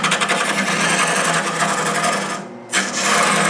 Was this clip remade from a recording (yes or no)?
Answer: no